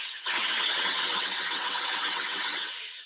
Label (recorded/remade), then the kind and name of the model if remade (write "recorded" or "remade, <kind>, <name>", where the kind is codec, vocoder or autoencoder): remade, vocoder, WaveNeXt